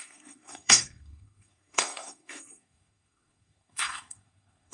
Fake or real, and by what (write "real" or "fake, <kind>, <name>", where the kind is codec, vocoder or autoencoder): fake, codec, SNAC